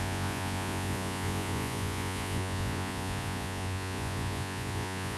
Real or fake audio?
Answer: fake